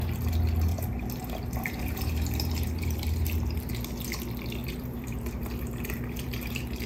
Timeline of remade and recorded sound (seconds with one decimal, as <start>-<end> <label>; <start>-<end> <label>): 0.0-0.7 recorded; 0.7-3.7 remade; 3.7-4.6 recorded; 4.6-6.9 remade